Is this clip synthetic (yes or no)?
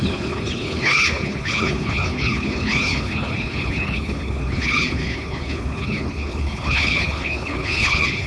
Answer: yes